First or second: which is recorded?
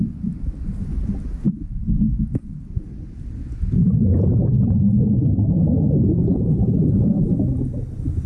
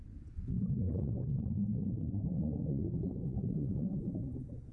first